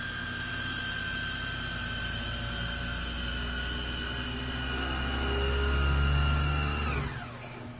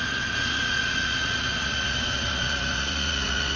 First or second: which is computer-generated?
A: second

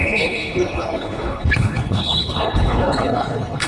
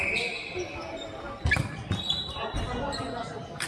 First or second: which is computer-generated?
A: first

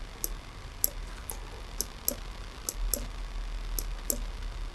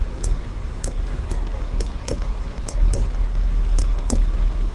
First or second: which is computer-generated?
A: second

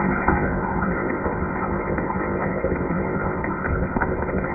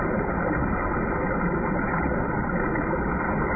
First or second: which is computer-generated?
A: first